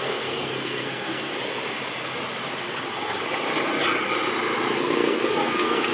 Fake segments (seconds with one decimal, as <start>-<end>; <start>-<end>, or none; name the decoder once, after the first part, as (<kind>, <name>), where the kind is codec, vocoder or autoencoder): 0.0-1.3 (codec, SNAC); 4.8-5.9